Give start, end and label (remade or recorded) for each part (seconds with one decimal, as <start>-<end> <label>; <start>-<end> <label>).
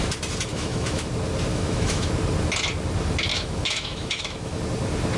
0.0-0.5 recorded; 0.5-1.1 remade; 1.1-1.5 recorded; 1.5-2.1 remade; 2.1-3.3 recorded; 3.3-4.6 remade; 4.6-5.2 recorded